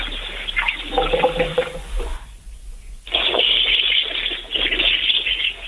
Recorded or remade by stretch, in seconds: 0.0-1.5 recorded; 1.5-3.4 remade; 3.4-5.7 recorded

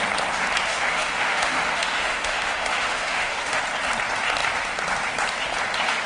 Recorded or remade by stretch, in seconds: 0.0-0.7 recorded; 0.7-3.6 remade; 3.6-6.1 recorded

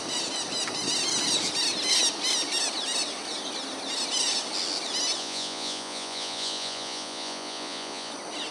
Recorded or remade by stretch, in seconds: 0.0-5.2 recorded; 5.2-8.1 remade; 8.1-8.5 recorded

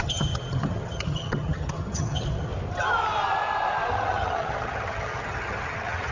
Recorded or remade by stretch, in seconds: 0.0-2.5 remade; 2.5-3.9 recorded; 3.9-6.1 remade

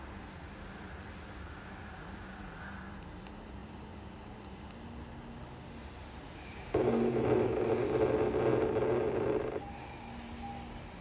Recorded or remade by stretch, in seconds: 0.0-11.0 recorded

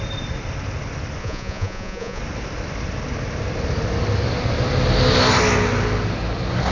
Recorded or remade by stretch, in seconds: 0.0-1.2 recorded; 1.2-2.2 remade; 2.2-6.7 recorded

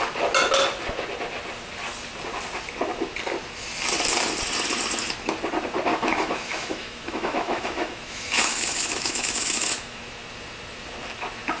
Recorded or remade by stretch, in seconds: 0.0-5.9 recorded; 5.9-10.0 remade; 10.0-11.6 recorded

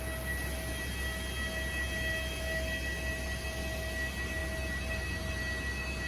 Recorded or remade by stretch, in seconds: 0.0-6.1 recorded